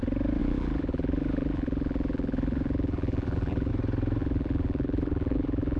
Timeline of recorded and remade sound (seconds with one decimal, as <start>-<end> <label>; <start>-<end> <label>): 0.0-0.4 recorded; 0.4-3.7 remade; 3.7-4.2 recorded; 4.2-5.8 remade